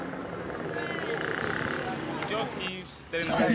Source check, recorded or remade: recorded